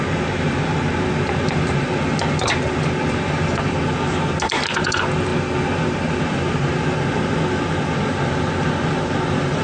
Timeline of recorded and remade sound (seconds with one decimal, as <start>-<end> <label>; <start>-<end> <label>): 0.0-9.6 recorded